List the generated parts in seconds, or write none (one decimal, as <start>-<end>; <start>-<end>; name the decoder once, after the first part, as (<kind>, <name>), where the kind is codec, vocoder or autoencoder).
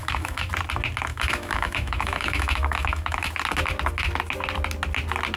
0.0-0.5 (autoencoder, DAC-VAE); 1.1-3.3